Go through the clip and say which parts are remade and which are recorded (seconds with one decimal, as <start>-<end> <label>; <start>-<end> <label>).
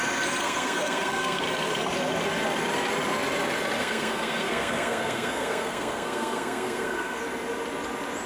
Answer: 0.0-0.4 recorded; 0.4-1.4 remade; 1.4-3.8 recorded; 3.8-7.2 remade; 7.2-8.3 recorded